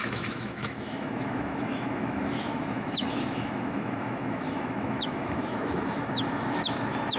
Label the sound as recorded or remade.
remade